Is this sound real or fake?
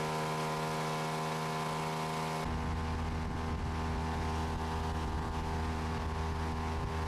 real